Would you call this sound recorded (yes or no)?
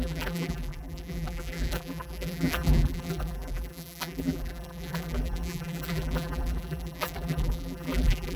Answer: no